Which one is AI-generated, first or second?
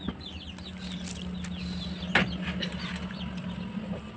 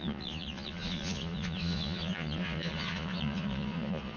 second